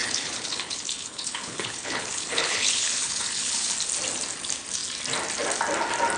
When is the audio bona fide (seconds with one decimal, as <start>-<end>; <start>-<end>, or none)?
3.7-6.2